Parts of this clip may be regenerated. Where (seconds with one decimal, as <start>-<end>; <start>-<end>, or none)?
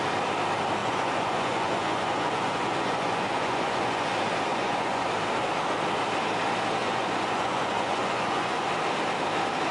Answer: 0.8-4.1; 4.5-5.1; 6.8-8.7